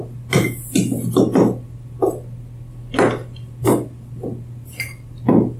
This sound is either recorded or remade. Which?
recorded